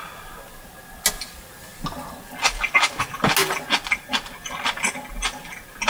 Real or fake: real